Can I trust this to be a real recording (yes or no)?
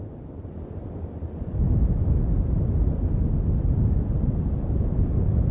yes